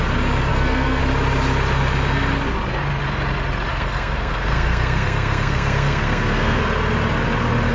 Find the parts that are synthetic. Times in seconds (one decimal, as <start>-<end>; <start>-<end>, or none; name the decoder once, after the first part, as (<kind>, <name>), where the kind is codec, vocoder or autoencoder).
0.5-1.0 (codec, SNAC); 3.7-6.6